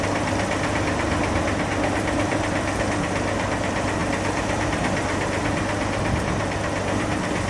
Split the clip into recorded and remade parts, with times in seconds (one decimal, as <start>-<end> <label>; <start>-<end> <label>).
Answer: 0.0-7.5 recorded